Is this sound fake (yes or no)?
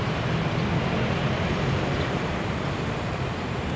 no